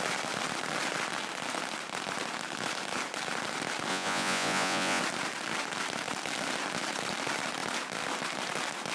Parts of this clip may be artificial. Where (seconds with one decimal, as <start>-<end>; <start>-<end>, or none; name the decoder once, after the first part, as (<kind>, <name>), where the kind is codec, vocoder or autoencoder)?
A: 3.9-5.0 (vocoder, Vocos)